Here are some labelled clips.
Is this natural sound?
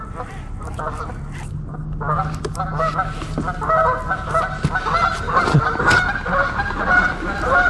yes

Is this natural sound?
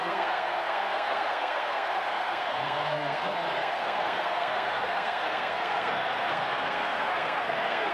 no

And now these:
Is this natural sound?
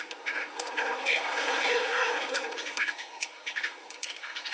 no